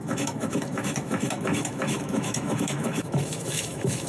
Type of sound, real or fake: fake